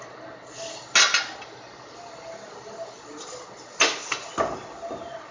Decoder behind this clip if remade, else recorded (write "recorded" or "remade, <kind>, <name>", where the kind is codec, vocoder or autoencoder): recorded